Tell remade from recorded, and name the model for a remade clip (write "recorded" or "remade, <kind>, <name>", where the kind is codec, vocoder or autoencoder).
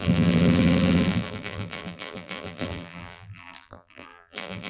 remade, vocoder, BigVGAN v2